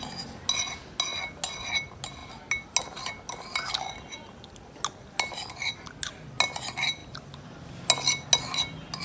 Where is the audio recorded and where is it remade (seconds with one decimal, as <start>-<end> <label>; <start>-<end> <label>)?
0.0-9.0 recorded